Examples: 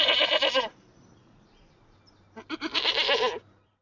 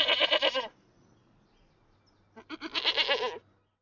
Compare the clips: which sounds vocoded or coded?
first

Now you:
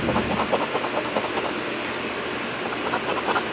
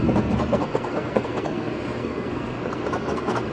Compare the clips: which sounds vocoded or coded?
second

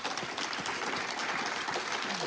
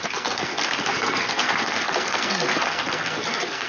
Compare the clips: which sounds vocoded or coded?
second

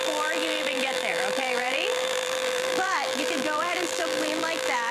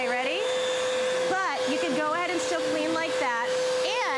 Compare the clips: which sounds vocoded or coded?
first